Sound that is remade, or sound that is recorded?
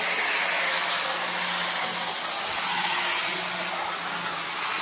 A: recorded